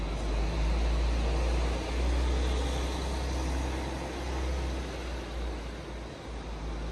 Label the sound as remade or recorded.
recorded